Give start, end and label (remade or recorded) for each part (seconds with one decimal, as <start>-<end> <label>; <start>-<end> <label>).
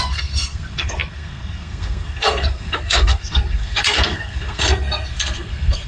0.0-5.9 remade